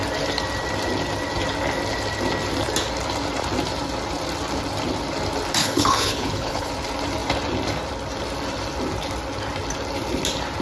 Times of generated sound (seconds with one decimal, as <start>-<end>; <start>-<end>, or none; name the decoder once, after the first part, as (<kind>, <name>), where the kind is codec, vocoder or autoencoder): 5.6-6.7 (codec, HILCodec)

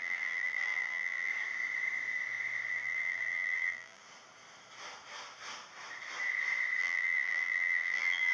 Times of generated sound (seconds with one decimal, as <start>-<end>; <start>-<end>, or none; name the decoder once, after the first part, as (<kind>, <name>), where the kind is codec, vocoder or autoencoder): 0.0-1.3 (vocoder, BigVGAN v2); 2.7-4.0; 6.8-8.3

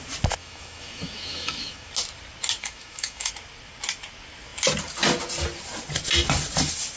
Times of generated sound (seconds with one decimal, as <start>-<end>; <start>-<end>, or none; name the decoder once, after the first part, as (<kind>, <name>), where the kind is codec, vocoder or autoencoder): 0.4-1.9 (autoencoder, DAC-VAE); 2.6-3.3

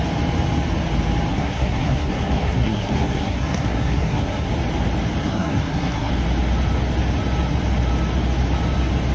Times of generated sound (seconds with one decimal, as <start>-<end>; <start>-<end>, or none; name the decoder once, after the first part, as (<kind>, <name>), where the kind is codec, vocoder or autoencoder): 1.3-4.5 (codec, SNAC); 5.2-6.1